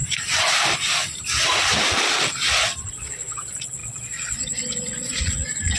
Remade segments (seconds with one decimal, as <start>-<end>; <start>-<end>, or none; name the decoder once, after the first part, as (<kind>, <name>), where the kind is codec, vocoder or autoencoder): 2.9-5.8 (vocoder, Vocos)